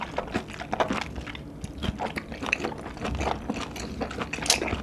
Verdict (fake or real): real